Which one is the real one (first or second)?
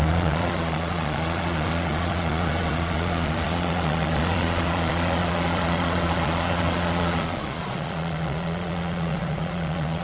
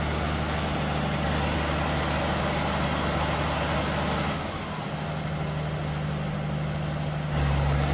second